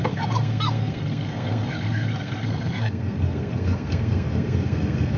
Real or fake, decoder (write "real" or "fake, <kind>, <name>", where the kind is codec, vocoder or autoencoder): fake, codec, SNAC